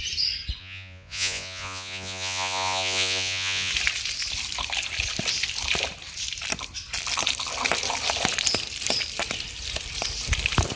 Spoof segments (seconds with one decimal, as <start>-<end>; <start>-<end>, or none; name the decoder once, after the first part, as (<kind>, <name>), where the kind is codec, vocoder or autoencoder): 0.6-3.7 (vocoder, Vocos)